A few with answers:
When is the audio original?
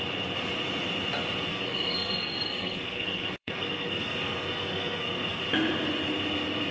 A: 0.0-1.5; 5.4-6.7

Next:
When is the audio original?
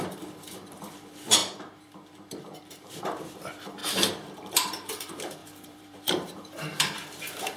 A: none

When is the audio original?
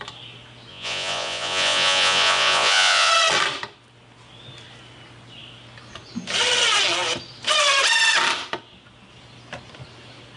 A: 0.0-0.7; 3.1-10.4